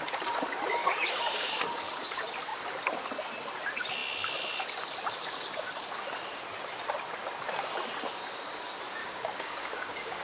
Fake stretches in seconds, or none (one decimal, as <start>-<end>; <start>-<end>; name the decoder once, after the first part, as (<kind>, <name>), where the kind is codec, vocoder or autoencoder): 0.8-1.5 (codec, DAC); 9.0-10.2